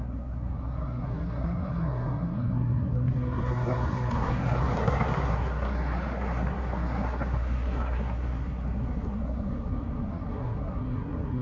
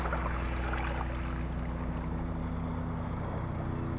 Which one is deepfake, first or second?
first